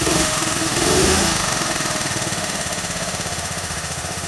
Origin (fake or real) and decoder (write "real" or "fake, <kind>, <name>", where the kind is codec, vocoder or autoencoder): fake, autoencoder, DAC-VAE